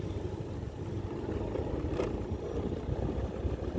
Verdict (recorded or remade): recorded